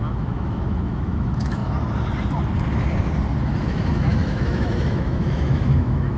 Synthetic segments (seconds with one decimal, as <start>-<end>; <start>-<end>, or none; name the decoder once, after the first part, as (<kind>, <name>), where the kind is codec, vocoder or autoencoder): 0.0-1.6 (autoencoder, DAC-VAE); 3.6-6.2